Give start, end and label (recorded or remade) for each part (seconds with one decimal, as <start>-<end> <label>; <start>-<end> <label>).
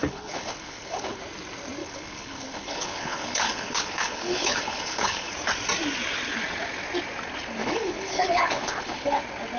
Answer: 0.0-1.2 remade; 1.2-1.8 recorded; 1.8-5.3 remade; 5.3-7.6 recorded; 7.6-9.2 remade; 9.2-9.6 recorded